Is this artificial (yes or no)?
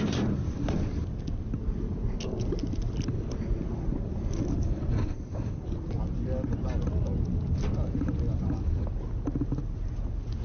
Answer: no